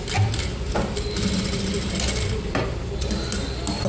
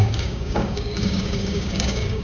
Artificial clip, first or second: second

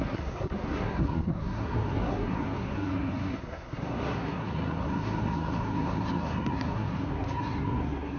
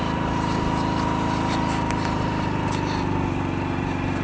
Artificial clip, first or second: first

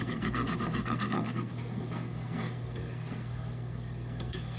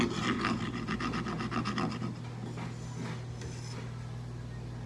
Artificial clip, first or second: first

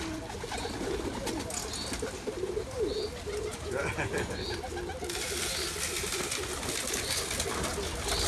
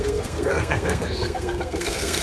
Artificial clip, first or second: second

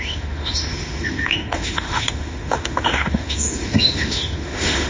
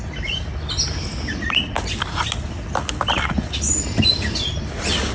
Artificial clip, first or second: first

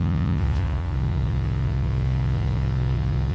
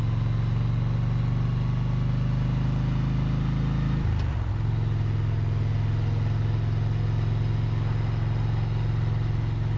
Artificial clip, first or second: first